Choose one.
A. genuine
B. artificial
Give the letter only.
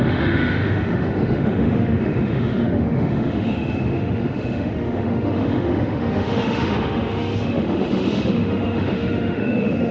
B